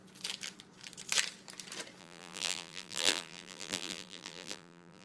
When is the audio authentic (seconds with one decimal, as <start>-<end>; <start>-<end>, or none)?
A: 0.0-2.0